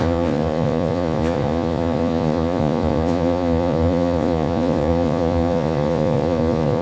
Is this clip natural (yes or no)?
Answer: no